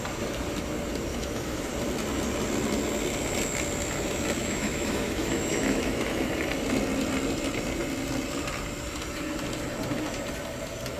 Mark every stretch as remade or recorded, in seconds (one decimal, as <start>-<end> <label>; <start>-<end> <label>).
0.0-1.1 recorded; 1.1-1.7 remade; 1.7-4.4 recorded; 4.4-6.3 remade; 6.3-11.0 recorded